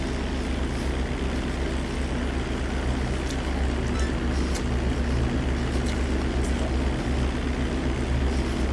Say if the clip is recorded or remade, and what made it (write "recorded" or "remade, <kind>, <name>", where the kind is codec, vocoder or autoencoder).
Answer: recorded